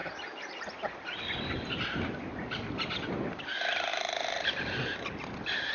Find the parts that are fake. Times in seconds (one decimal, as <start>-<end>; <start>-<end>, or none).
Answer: 0.0-3.4; 3.9-4.5